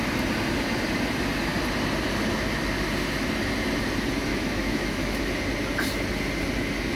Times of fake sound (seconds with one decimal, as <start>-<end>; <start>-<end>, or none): 4.3-5.2